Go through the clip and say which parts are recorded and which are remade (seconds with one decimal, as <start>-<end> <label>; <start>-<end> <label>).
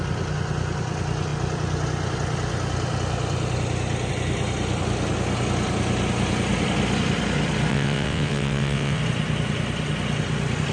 0.0-7.7 recorded; 7.7-9.0 remade; 9.0-10.7 recorded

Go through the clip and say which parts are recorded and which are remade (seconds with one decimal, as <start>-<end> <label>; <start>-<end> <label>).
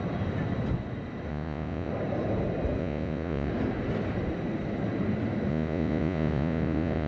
0.0-1.3 recorded; 1.3-1.9 remade; 1.9-2.8 recorded; 2.8-3.5 remade; 3.5-5.5 recorded; 5.5-7.1 remade